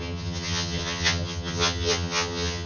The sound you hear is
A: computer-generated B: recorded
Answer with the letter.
A